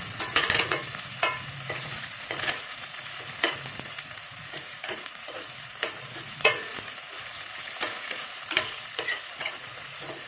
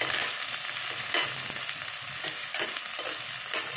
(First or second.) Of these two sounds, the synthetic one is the first